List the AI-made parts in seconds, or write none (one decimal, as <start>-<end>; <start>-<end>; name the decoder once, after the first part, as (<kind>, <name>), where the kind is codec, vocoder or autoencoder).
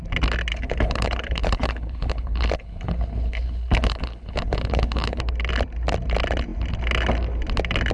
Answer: 0.5-5.2 (codec, HILCodec)